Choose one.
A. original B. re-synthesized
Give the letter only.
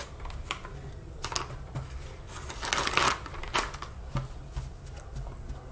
A